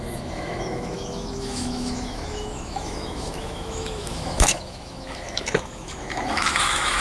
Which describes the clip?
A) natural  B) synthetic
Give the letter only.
B